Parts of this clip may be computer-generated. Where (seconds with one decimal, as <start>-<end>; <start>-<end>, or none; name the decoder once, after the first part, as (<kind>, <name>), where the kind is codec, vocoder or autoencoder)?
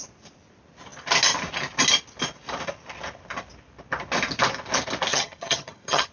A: 5.1-6.1 (vocoder, HiFi-GAN)